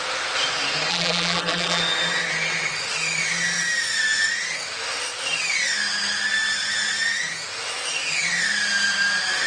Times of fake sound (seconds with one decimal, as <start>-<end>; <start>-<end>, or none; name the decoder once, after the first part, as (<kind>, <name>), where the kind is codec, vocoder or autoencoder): 0.9-1.8 (vocoder, BigVGAN v2)